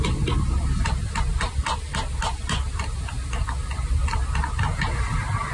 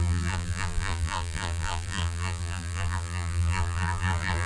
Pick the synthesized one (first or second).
second